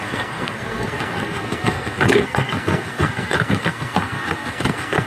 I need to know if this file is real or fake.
fake